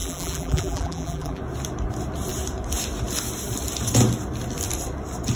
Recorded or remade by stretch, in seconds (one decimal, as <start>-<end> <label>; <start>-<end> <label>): 0.0-1.4 remade; 1.4-5.4 recorded